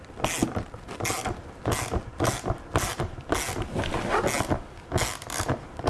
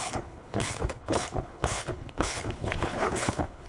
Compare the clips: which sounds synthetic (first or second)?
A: second